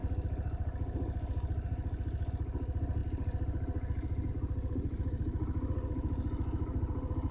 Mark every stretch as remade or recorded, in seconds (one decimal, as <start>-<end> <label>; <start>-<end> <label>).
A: 0.0-7.3 recorded